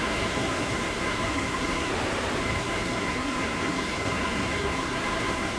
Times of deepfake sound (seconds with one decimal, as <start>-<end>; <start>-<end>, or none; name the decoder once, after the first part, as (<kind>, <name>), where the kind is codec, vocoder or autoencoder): 0.0-1.9 (codec, SNAC); 2.4-5.6